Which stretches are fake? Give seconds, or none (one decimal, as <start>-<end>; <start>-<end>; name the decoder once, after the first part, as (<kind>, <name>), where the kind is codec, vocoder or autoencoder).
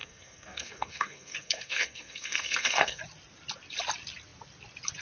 0.0-3.0 (codec, SNAC)